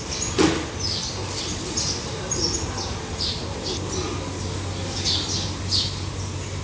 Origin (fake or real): real